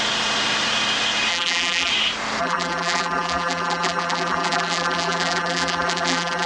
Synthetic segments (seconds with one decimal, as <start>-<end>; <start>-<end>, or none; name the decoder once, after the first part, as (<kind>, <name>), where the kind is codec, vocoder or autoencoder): 1.3-1.9 (vocoder, BigVGAN v2); 2.4-6.5